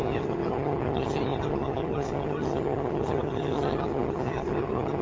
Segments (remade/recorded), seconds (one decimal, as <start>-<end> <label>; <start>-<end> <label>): 0.0-5.0 remade